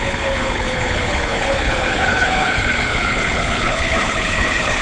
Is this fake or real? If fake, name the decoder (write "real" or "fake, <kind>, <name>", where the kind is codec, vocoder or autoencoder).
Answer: fake, codec, HILCodec